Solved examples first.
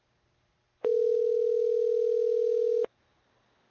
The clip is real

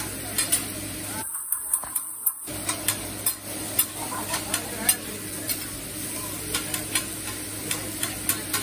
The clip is real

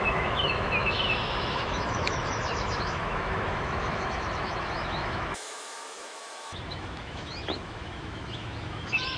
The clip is fake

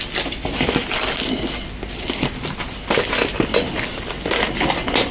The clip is real